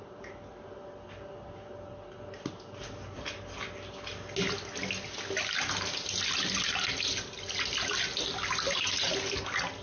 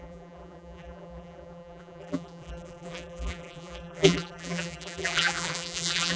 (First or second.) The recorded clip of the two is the first